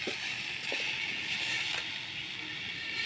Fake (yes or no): no